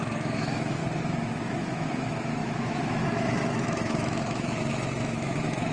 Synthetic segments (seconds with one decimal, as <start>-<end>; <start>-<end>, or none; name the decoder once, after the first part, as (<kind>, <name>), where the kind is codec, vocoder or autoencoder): 0.0-0.8 (autoencoder, DAC-VAE); 1.4-5.7